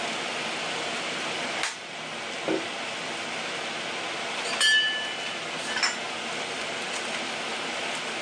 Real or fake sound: real